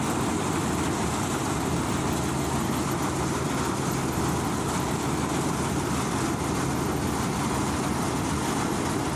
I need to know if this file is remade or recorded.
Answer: recorded